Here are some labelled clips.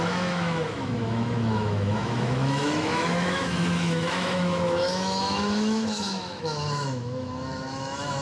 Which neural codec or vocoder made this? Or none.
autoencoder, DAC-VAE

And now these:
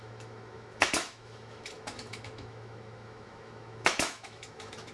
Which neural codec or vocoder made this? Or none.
autoencoder, DAC-VAE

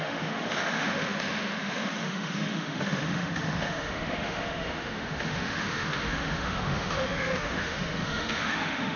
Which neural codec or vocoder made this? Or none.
autoencoder, DAC-VAE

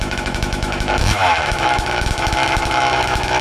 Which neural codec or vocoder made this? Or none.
autoencoder, DAC-VAE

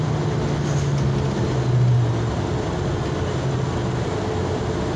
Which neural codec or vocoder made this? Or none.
none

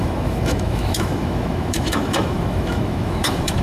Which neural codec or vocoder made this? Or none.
autoencoder, DAC-VAE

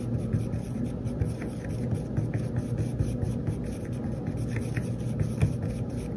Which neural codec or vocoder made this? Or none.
none